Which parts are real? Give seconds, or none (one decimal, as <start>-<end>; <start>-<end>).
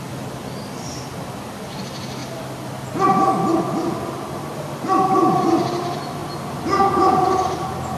0.0-8.0